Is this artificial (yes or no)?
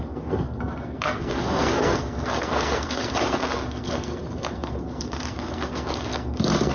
yes